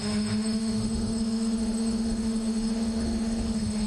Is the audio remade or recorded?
remade